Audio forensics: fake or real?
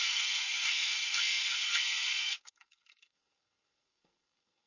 fake